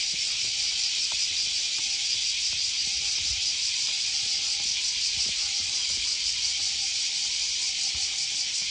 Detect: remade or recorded remade